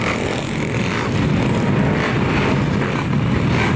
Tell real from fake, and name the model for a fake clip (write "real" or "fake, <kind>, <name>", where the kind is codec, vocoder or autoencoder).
real